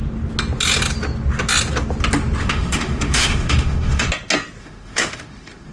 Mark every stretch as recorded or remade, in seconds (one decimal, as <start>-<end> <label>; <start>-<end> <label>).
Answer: 0.0-2.4 recorded; 2.4-4.1 remade; 4.1-4.6 recorded; 4.6-5.7 remade